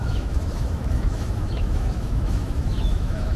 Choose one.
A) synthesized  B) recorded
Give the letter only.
A